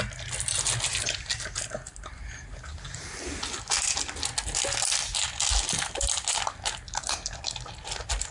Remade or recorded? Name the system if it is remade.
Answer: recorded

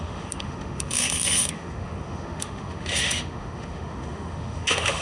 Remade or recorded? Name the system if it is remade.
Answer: remade, autoencoder, DAC-VAE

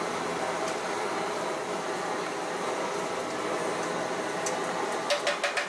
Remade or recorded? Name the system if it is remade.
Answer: recorded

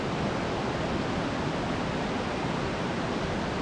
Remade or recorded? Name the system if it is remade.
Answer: recorded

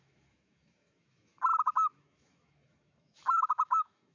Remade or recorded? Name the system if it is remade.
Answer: remade, autoencoder, DAC-VAE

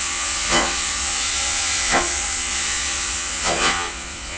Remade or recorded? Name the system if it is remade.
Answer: remade, vocoder, Vocos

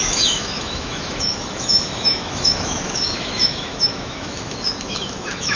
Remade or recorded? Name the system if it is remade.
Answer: remade, autoencoder, DAC-VAE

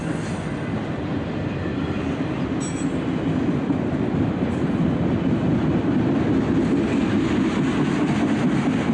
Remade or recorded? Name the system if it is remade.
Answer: recorded